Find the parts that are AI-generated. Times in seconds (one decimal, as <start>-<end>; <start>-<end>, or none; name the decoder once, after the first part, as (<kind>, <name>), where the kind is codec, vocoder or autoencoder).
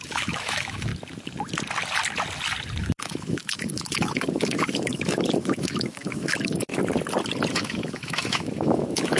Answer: 0.0-0.9 (autoencoder, DAC-VAE); 2.8-6.7; 7.5-9.2